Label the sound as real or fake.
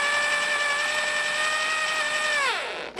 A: real